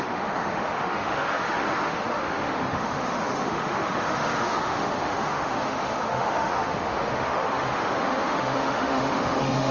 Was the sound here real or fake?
fake